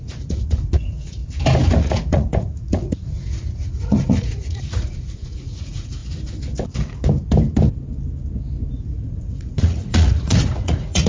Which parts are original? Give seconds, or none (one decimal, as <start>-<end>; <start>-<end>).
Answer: 1.2-1.8; 6.0-8.7